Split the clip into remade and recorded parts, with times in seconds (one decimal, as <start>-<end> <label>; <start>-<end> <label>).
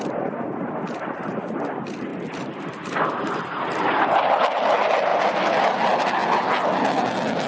0.0-7.5 recorded